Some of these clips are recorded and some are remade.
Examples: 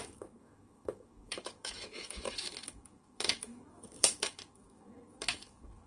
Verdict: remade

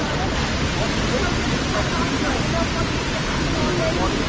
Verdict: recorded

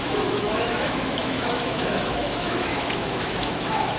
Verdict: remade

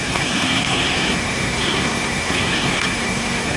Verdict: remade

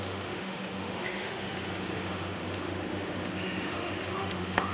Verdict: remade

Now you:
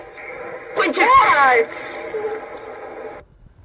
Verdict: recorded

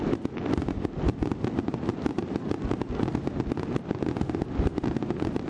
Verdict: recorded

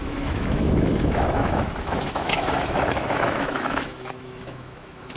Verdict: remade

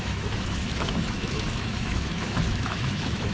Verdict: remade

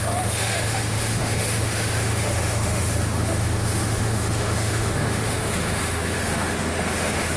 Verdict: remade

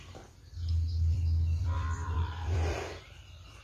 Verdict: remade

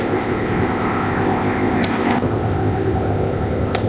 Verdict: remade